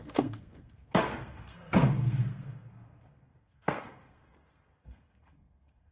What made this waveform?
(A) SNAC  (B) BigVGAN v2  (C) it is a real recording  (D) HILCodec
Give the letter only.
A